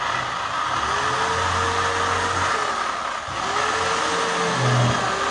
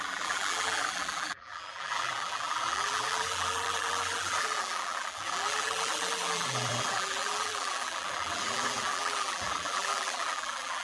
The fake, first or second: second